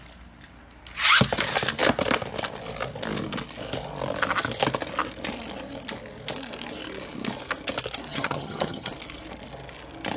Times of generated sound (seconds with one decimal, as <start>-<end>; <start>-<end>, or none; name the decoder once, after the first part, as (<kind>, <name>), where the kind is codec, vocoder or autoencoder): 8.1-8.9 (vocoder, HiFi-GAN)